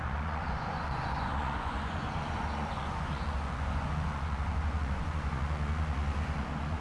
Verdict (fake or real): fake